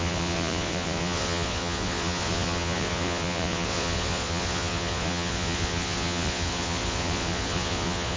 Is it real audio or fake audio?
fake